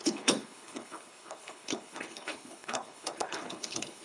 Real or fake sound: fake